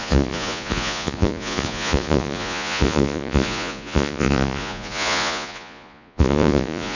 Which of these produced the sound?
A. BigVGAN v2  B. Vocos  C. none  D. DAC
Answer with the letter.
B